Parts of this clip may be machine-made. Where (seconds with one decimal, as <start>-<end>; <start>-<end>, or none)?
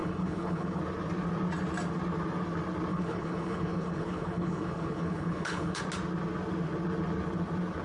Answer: 0.0-0.8; 2.9-5.8